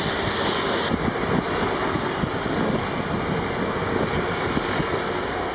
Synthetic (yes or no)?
no